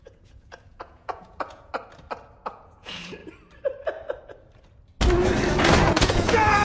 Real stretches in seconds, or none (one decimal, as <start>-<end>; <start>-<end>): 1.7-2.4; 3.2-5.8

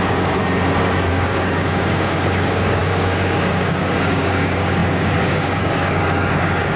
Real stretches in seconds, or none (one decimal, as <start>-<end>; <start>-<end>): 0.4-1.1

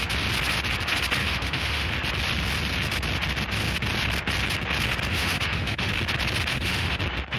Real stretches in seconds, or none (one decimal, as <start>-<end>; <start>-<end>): 0.0-1.2; 1.9-5.1; 5.9-6.5; 7.0-7.4

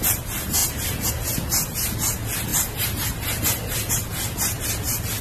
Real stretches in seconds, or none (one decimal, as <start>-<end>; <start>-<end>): 0.0-5.2

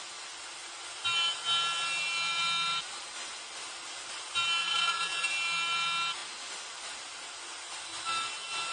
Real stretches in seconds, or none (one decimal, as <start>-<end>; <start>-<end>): 0.0-4.6; 5.3-8.7

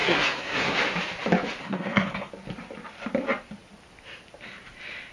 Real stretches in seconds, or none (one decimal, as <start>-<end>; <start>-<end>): 0.8-1.6; 2.3-5.1